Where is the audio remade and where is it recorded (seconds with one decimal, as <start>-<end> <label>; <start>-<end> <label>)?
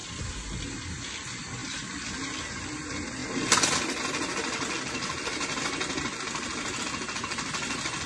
0.0-8.1 recorded